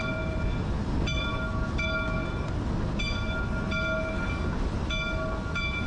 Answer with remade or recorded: recorded